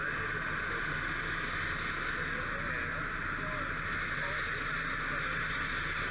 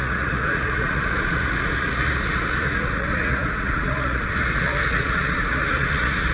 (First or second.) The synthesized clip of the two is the second